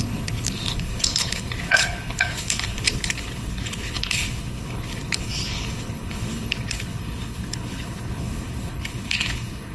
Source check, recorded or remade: remade